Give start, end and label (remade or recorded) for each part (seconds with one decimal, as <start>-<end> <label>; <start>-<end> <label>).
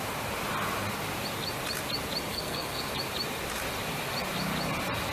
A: 0.0-2.3 recorded; 2.3-2.9 remade; 2.9-5.1 recorded